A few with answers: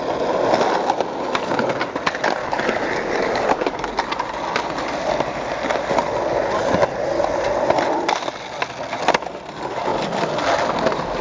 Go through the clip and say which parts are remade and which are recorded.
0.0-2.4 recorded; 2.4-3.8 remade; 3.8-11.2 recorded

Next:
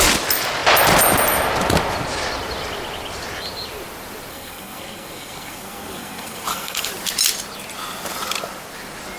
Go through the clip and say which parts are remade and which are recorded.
0.0-4.3 recorded; 4.3-6.9 remade; 6.9-9.2 recorded